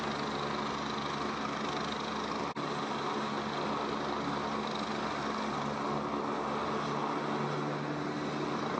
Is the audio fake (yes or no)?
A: no